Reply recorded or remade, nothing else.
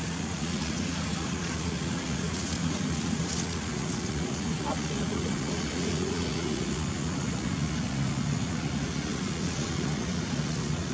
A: remade